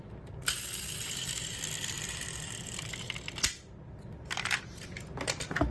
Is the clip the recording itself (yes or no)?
yes